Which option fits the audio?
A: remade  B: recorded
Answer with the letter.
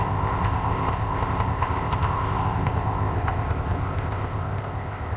A